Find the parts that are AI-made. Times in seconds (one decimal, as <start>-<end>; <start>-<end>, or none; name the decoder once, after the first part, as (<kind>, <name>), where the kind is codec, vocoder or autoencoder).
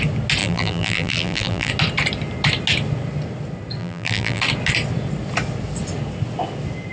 0.4-1.7 (vocoder, BigVGAN v2); 3.8-4.4